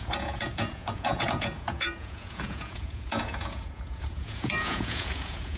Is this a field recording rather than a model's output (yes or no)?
no